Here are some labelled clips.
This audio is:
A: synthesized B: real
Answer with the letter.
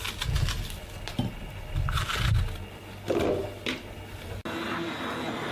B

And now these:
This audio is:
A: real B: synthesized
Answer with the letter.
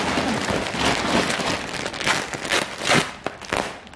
A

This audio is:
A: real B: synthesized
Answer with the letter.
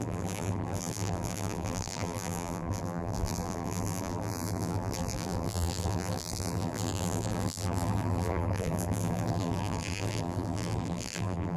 B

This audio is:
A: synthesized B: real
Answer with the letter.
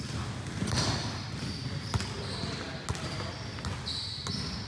B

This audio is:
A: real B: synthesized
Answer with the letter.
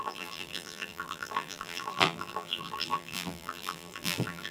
B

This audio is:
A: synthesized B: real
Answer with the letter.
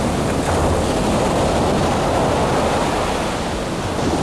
B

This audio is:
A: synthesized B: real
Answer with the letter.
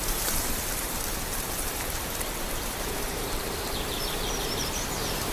A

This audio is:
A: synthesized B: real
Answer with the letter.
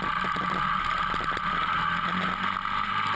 B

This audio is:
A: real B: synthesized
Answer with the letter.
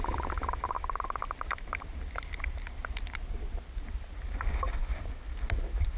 A